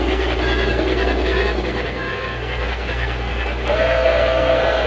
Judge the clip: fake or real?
fake